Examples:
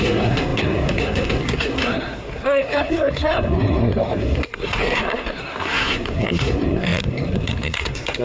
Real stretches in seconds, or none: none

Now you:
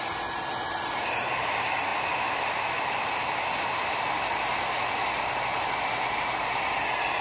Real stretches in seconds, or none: 0.0-7.2